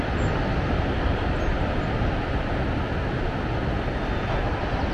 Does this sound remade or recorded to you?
recorded